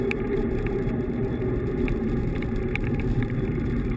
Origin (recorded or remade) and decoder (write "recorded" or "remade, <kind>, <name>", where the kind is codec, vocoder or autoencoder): remade, vocoder, BigVGAN v2